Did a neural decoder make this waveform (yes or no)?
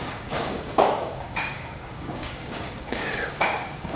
yes